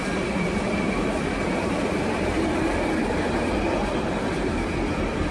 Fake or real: fake